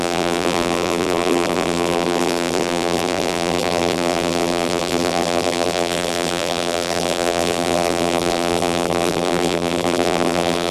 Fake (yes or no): yes